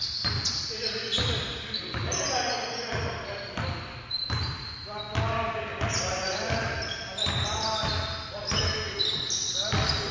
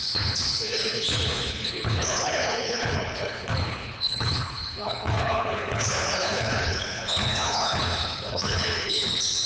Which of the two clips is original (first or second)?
first